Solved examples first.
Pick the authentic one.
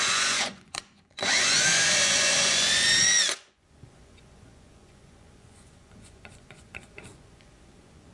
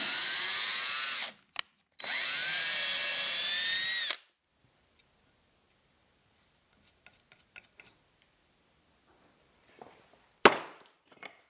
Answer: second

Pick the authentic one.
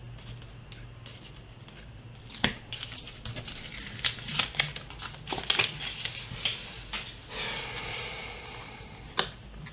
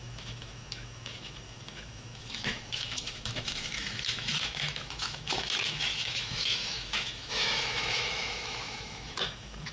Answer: first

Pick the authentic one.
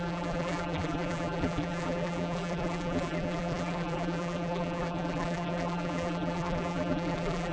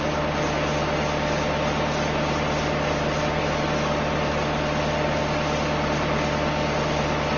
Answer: second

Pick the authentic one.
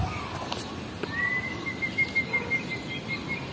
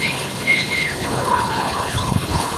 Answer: first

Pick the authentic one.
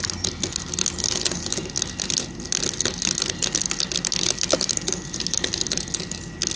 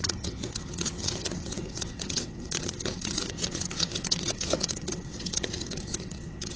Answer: first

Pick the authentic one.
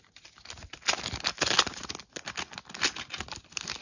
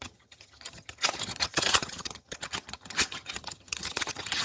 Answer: first